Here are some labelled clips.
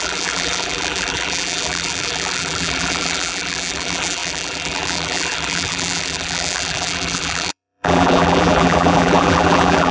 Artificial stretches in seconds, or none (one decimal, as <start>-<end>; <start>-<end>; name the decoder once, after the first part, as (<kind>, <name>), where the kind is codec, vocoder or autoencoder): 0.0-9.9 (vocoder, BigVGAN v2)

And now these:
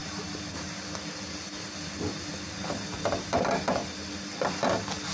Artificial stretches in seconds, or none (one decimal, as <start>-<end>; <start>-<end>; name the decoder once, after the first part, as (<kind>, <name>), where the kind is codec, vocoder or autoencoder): 3.8-4.4 (vocoder, BigVGAN v2)

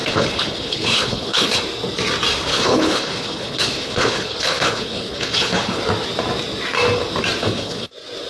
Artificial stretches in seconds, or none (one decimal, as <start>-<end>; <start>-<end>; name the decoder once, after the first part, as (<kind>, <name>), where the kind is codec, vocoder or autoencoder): 0.0-1.6 (codec, HILCodec); 2.5-5.8; 7.4-7.9

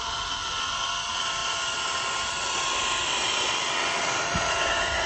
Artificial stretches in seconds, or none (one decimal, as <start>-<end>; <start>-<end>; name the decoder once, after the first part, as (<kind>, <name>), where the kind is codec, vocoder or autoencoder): 1.4-4.5 (vocoder, BigVGAN v2)

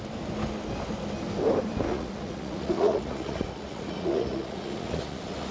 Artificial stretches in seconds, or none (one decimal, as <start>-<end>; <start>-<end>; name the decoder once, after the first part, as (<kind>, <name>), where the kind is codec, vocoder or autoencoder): 1.9-5.5 (vocoder, Vocos)